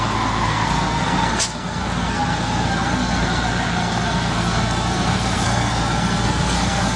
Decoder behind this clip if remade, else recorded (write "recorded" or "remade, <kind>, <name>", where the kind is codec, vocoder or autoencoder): remade, codec, SNAC